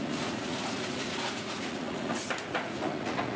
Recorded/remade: remade